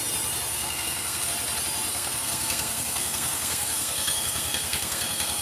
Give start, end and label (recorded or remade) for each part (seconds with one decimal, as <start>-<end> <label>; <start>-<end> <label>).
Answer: 0.0-0.5 recorded; 0.5-1.3 remade; 1.3-1.9 recorded; 1.9-5.4 remade

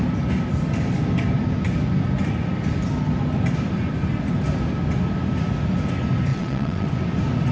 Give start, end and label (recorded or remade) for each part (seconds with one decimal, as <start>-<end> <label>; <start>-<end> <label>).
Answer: 0.0-6.3 recorded; 6.3-6.9 remade; 6.9-7.5 recorded

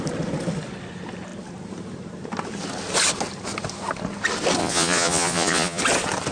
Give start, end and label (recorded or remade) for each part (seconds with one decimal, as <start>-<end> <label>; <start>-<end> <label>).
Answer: 0.0-4.6 recorded; 4.6-5.8 remade; 5.8-6.3 recorded

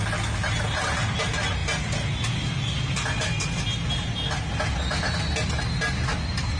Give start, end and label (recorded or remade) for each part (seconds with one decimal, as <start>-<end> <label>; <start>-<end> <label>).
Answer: 0.0-6.6 recorded

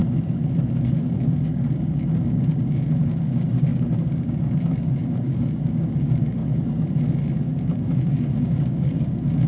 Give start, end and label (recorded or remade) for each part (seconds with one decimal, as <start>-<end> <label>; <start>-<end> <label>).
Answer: 0.0-0.8 recorded; 0.8-6.4 remade; 6.4-7.4 recorded; 7.4-9.5 remade

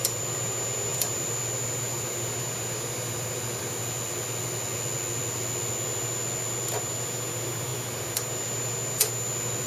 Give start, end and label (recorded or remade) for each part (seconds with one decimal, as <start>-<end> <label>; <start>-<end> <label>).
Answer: 0.0-9.7 recorded

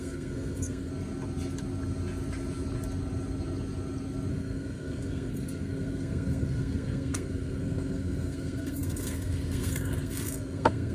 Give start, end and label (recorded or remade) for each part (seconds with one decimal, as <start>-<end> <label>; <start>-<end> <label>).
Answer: 0.0-0.9 remade; 0.9-4.3 recorded; 4.3-10.9 remade

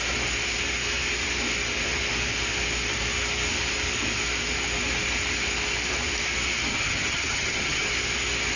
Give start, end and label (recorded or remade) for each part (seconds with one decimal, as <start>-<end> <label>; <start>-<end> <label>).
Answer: 0.0-6.7 recorded; 6.7-7.9 remade; 7.9-8.6 recorded